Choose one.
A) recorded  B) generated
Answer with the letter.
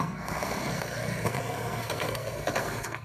B